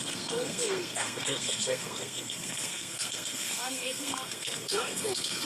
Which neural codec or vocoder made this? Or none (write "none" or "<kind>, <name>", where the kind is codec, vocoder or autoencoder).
codec, SNAC